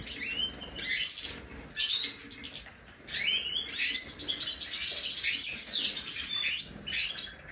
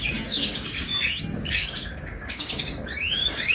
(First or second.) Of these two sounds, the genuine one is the first